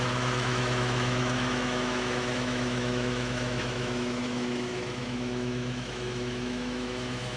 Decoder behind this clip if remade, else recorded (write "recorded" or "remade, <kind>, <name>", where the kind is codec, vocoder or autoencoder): remade, autoencoder, DAC-VAE